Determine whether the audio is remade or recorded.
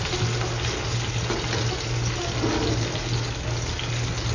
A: recorded